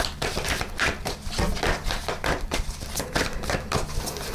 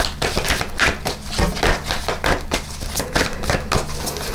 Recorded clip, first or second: second